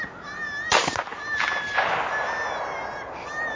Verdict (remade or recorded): recorded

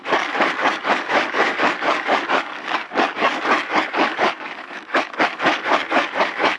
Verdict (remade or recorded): remade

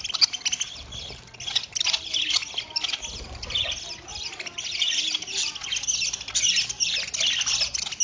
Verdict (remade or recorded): recorded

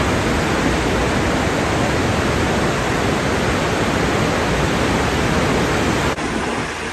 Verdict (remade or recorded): recorded